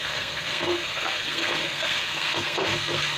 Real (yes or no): no